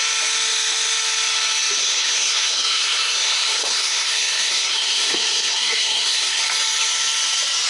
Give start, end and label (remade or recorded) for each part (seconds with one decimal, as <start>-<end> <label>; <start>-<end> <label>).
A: 0.0-1.8 recorded; 1.8-6.4 remade; 6.4-7.7 recorded